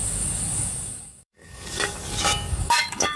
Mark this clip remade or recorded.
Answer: remade